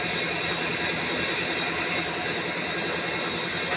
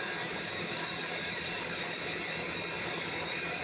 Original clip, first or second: first